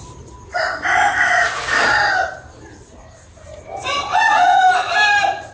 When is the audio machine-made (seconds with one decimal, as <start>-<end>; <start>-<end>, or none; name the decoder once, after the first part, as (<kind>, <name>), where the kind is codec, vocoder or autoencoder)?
4.1-4.6 (vocoder, Vocos)